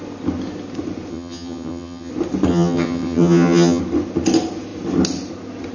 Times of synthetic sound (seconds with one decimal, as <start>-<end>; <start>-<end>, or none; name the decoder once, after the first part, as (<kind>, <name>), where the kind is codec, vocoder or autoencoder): 1.1-2.1 (vocoder, HiFi-GAN); 2.5-3.8